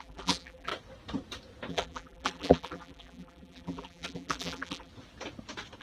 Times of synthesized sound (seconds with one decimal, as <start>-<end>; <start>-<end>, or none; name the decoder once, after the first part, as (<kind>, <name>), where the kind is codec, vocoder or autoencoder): 0.0-0.7 (vocoder, BigVGAN v2); 1.7-4.9